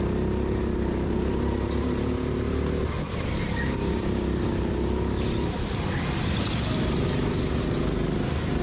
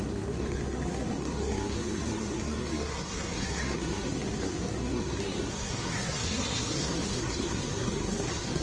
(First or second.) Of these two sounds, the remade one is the second